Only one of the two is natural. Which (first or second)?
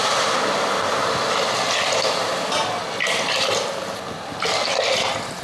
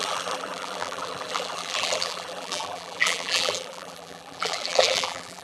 first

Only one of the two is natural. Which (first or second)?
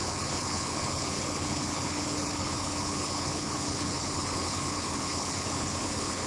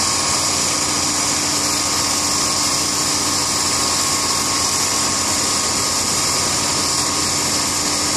second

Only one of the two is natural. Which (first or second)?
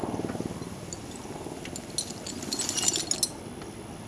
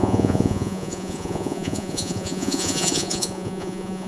first